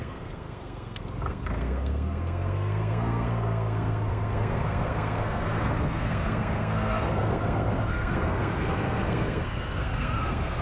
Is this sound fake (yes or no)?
yes